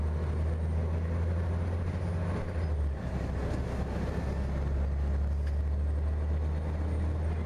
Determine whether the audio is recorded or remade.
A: recorded